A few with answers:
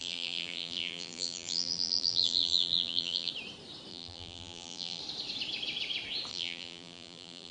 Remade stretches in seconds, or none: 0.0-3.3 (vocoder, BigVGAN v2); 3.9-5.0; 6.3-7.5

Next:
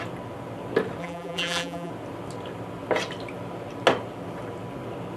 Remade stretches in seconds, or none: 1.0-1.9 (vocoder, BigVGAN v2)

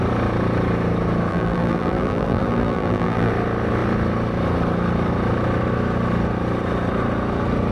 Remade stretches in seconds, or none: 1.3-3.3 (vocoder, BigVGAN v2)

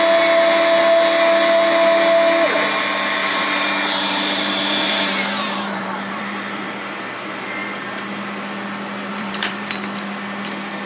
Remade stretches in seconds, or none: 3.2-6.7 (vocoder, BigVGAN v2); 9.1-9.7

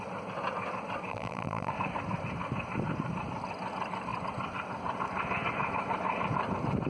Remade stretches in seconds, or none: 1.1-1.7 (vocoder, BigVGAN v2)